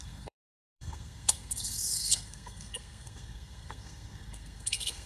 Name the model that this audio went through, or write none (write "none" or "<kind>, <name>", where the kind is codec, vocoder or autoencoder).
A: codec, SNAC